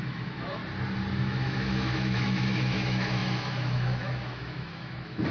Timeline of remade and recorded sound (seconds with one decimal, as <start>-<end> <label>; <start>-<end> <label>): 0.0-0.6 remade; 0.6-1.2 recorded; 1.2-5.3 remade